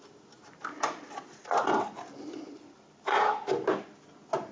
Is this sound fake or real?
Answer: real